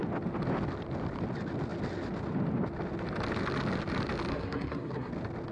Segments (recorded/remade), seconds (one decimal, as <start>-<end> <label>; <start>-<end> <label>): 0.0-4.3 recorded; 4.3-5.1 remade; 5.1-5.5 recorded